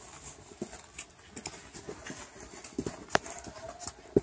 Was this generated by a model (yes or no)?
no